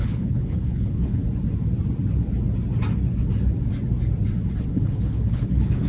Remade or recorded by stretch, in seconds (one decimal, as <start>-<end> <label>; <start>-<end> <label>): 0.0-1.2 remade; 1.2-4.7 recorded; 4.7-5.9 remade

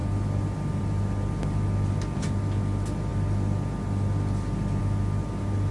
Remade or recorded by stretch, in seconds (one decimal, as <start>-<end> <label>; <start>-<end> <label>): 0.0-5.7 recorded

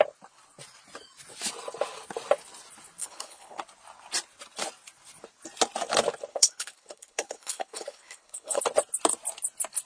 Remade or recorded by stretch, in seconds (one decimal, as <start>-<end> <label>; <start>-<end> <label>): 0.0-3.0 recorded; 3.0-3.6 remade; 3.6-6.3 recorded; 6.3-8.6 remade; 8.6-9.9 recorded

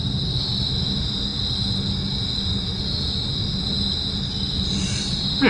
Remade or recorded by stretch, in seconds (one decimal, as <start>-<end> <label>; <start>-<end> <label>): 0.0-5.5 recorded